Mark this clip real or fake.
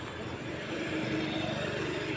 real